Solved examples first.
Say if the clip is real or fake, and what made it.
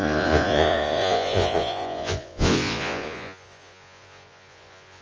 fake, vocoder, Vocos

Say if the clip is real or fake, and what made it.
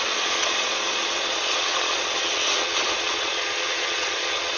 fake, vocoder, Vocos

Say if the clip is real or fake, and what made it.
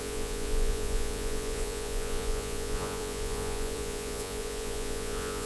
fake, vocoder, Vocos